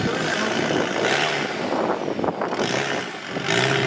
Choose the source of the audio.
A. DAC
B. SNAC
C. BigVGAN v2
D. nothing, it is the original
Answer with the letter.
D